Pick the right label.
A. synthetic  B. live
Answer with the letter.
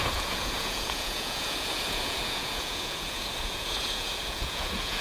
A